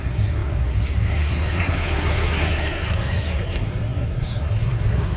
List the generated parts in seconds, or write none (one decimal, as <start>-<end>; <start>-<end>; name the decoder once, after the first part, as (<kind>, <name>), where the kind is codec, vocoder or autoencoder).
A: 0.0-5.2 (codec, SNAC)